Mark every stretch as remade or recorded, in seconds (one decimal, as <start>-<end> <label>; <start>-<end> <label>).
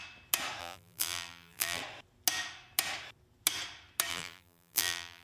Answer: 0.0-0.6 recorded; 0.6-1.8 remade; 1.8-4.1 recorded; 4.1-5.2 remade